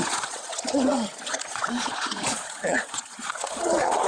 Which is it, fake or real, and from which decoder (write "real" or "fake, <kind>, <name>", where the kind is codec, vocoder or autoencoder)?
fake, vocoder, Vocos